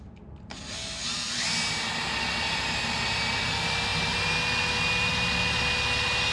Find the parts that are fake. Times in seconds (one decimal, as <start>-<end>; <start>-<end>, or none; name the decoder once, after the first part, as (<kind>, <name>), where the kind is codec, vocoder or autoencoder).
none

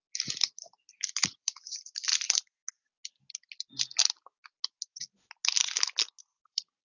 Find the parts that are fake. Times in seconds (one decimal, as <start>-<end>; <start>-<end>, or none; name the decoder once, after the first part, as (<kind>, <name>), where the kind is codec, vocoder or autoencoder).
0.9-2.1 (vocoder, BigVGAN v2); 6.2-6.9

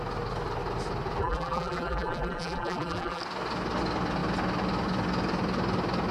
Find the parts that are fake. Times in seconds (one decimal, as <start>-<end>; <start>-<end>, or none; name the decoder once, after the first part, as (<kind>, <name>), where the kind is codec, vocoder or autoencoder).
1.2-3.2 (vocoder, BigVGAN v2)